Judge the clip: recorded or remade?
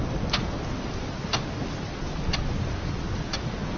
recorded